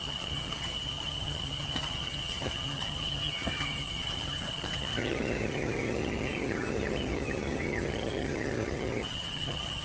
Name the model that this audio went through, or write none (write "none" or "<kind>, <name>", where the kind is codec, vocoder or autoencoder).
vocoder, HiFi-GAN